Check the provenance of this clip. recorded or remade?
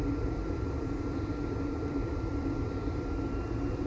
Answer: remade